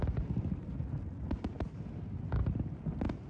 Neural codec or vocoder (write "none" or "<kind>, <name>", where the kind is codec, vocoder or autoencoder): none